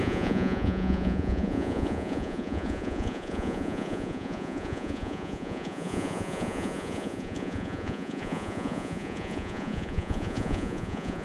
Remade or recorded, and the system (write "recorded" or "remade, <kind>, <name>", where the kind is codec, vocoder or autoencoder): remade, vocoder, Vocos